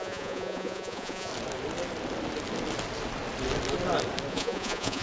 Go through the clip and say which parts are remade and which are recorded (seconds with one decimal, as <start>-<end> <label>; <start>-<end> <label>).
0.0-1.3 remade; 1.3-4.3 recorded; 4.3-5.0 remade

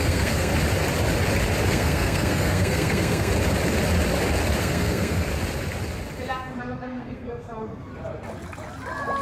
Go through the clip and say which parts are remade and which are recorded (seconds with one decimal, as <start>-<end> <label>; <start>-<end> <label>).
0.0-0.5 remade; 0.5-1.7 recorded; 1.7-3.3 remade; 3.3-4.6 recorded; 4.6-5.3 remade; 5.3-6.6 recorded; 6.6-7.9 remade; 7.9-9.2 recorded

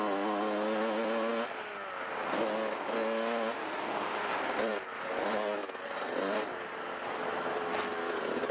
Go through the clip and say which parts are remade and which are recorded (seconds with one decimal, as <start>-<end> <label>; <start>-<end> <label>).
0.0-8.5 recorded

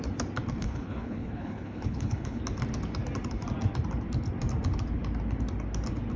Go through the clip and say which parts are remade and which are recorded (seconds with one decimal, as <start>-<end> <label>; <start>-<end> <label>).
0.0-0.6 recorded; 0.6-2.4 remade; 2.4-6.2 recorded